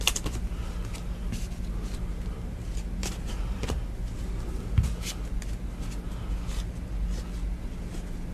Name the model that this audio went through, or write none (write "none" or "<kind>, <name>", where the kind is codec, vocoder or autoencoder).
none